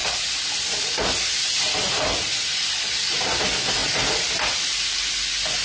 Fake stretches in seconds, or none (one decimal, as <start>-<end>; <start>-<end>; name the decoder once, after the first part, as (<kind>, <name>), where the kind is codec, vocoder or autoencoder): 0.0-3.4 (vocoder, BigVGAN v2); 3.8-4.3